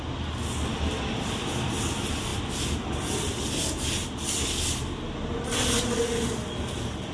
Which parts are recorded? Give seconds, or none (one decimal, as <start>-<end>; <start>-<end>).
0.0-7.1